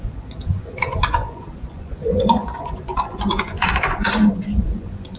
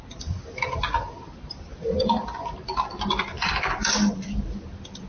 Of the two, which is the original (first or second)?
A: second